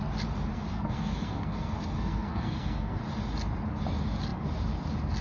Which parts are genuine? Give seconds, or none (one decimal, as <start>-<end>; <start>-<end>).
0.0-0.5; 3.0-5.2